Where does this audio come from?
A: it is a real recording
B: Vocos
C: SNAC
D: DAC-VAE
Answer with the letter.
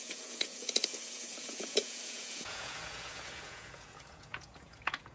B